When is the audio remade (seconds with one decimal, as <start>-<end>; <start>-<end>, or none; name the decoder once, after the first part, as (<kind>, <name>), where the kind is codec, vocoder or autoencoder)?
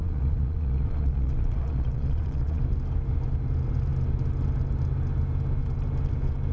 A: 0.0-2.6 (vocoder, Vocos)